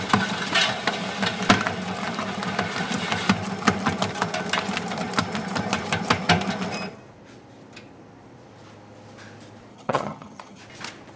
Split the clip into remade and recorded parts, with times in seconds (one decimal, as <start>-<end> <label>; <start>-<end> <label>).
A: 0.0-9.7 recorded; 9.7-10.6 remade; 10.6-11.2 recorded